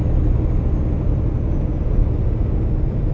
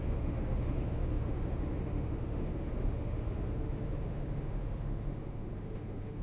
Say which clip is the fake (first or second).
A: second